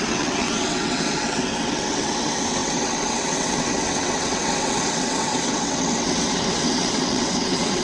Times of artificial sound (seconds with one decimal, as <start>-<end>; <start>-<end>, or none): 0.0-7.8